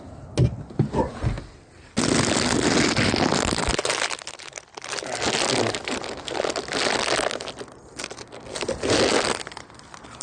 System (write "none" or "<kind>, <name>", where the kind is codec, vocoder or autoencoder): none